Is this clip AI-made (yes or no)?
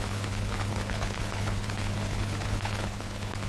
yes